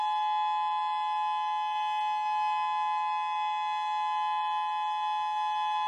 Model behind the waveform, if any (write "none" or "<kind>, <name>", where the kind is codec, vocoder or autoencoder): none